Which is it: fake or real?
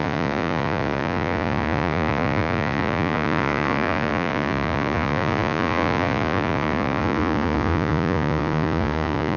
fake